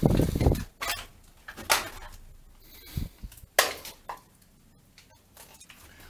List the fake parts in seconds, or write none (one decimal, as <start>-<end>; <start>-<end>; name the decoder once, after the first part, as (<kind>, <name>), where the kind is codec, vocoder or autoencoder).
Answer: none